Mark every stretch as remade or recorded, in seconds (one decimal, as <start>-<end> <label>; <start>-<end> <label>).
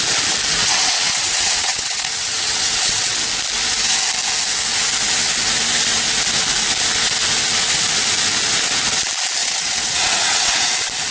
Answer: 0.0-0.6 recorded; 0.6-3.1 remade; 3.1-9.4 recorded; 9.4-10.7 remade; 10.7-11.1 recorded